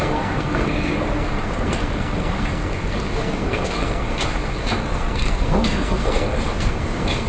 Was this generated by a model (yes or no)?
yes